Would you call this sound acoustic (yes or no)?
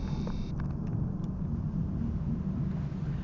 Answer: yes